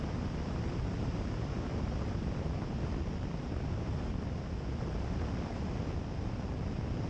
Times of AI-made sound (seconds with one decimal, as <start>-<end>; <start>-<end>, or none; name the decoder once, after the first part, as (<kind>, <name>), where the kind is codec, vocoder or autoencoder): none